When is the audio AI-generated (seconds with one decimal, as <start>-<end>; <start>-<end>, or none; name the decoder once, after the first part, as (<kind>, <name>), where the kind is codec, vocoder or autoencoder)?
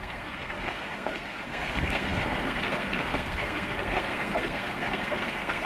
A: 0.0-5.7 (codec, SNAC)